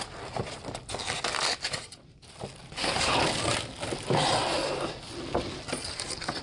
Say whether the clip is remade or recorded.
recorded